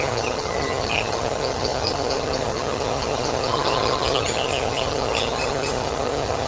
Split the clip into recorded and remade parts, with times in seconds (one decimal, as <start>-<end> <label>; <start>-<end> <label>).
0.0-6.5 remade